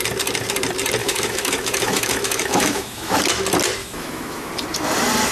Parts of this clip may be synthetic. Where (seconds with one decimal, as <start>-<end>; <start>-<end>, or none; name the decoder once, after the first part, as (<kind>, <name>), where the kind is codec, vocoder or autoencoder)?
1.0-3.2 (autoencoder, DAC-VAE); 3.8-4.5